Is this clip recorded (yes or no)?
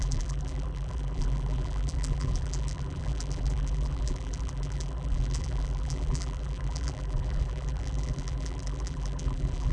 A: no